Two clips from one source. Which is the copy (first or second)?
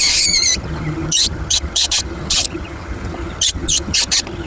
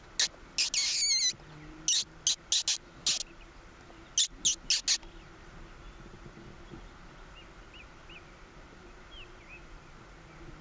first